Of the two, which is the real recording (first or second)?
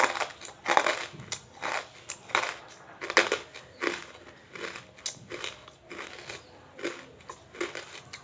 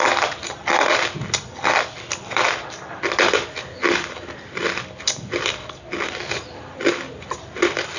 first